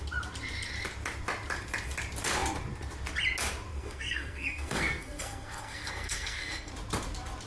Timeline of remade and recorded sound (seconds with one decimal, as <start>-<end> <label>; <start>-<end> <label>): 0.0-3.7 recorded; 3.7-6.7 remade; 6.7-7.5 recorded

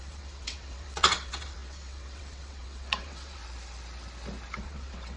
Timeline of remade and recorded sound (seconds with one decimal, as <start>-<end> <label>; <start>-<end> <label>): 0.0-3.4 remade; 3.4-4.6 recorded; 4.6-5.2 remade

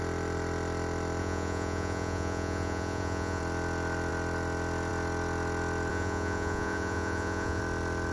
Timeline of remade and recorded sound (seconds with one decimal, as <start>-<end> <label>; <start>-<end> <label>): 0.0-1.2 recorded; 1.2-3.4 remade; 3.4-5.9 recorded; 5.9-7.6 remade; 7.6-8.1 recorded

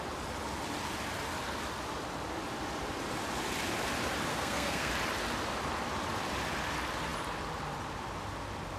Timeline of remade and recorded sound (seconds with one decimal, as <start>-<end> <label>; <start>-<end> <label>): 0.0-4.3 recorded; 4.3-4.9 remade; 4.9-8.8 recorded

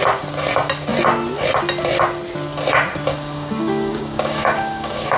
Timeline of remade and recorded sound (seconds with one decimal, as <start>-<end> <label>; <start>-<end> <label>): 0.0-3.1 recorded; 3.1-5.2 remade

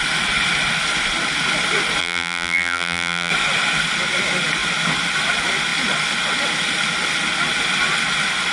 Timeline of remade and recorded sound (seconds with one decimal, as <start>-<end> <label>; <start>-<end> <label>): 0.0-2.0 recorded; 2.0-3.3 remade; 3.3-8.5 recorded

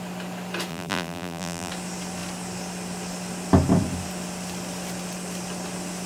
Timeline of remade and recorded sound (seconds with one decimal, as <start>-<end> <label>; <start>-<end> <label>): 0.0-0.7 recorded; 0.7-1.7 remade; 1.7-6.1 recorded

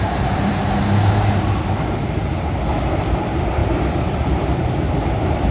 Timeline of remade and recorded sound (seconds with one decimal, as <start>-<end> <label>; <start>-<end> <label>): 0.0-0.6 remade; 0.6-2.7 recorded; 2.7-5.5 remade